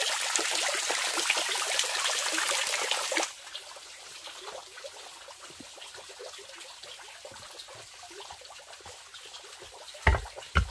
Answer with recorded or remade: recorded